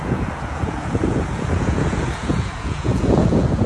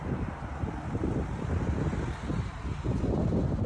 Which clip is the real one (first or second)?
second